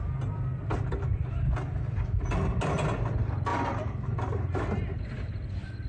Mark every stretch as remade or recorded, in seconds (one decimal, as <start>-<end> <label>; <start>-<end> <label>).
0.0-0.7 recorded; 0.7-1.4 remade; 1.4-3.5 recorded; 3.5-5.5 remade; 5.5-5.9 recorded